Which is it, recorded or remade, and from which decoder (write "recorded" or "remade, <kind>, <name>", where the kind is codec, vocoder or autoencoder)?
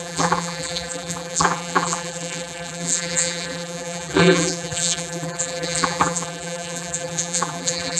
remade, vocoder, BigVGAN v2